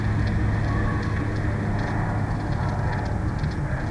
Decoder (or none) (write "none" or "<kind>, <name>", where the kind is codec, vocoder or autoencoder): none